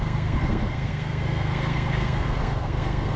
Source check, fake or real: fake